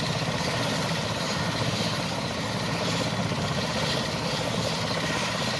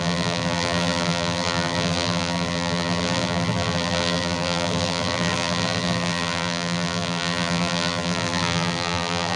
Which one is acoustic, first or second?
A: first